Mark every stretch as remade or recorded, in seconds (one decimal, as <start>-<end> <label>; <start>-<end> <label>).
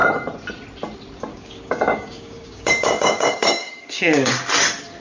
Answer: 0.0-1.3 recorded; 1.3-4.3 remade; 4.3-5.0 recorded